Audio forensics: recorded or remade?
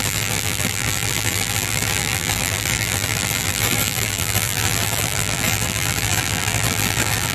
remade